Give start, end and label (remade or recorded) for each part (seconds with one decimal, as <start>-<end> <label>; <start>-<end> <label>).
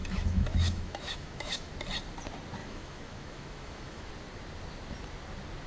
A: 0.0-1.7 remade; 1.7-2.6 recorded; 2.6-4.1 remade; 4.1-5.7 recorded